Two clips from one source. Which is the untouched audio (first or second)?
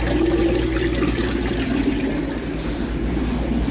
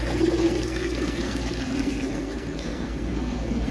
first